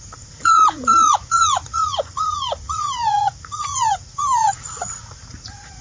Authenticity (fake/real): fake